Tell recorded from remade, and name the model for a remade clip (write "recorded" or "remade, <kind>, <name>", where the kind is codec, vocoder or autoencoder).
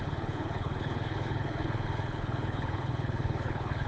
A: remade, codec, HILCodec